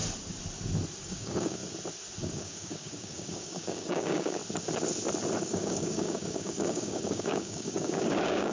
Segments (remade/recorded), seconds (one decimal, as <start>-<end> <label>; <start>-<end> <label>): 0.0-1.0 recorded; 1.0-1.6 remade; 1.6-2.2 recorded; 2.2-4.4 remade; 4.4-5.4 recorded; 5.4-8.5 remade